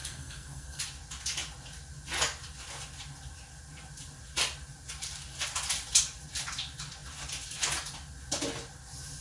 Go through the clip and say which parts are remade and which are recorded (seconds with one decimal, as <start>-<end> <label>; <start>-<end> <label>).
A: 0.0-0.8 remade; 0.8-9.2 recorded